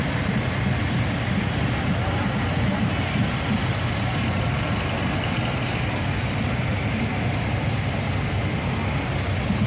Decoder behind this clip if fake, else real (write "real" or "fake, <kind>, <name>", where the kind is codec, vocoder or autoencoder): real